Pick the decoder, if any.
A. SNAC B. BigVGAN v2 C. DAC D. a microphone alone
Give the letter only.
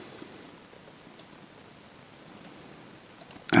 D